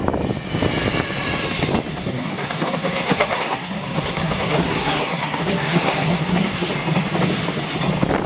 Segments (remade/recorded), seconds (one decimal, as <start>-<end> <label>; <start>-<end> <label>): 0.0-1.9 recorded; 1.9-6.7 remade; 6.7-8.3 recorded